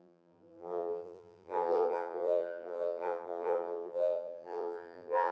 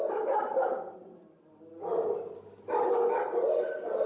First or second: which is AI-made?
first